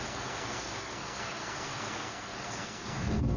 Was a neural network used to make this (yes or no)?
yes